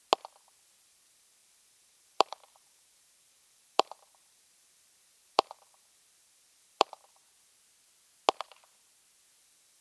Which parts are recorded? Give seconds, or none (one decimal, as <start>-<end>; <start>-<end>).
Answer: 0.0-0.8; 7.2-9.4